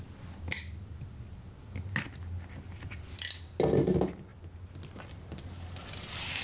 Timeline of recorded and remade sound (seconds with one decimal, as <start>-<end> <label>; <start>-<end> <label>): 0.0-6.4 recorded